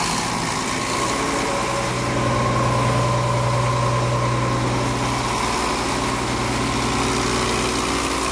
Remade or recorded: recorded